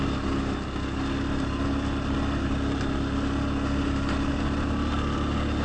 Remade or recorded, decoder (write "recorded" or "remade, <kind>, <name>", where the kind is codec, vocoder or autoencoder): recorded